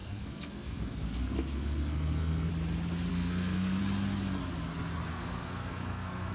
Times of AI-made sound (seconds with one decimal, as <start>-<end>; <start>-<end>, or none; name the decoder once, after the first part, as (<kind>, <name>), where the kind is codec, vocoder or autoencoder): 0.0-2.5 (codec, SNAC); 3.1-3.8; 5.1-6.3